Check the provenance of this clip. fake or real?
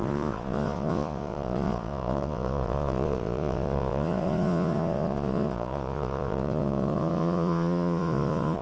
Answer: fake